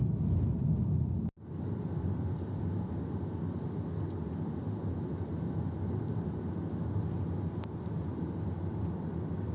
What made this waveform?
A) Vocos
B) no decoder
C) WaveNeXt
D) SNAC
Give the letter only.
B